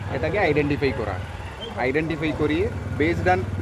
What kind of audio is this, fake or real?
real